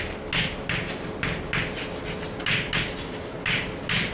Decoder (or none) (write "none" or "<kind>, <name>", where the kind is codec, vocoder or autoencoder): none